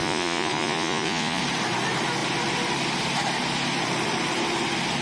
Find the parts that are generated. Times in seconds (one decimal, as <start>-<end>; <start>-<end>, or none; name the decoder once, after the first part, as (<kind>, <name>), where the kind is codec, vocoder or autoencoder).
0.0-1.4 (vocoder, Vocos)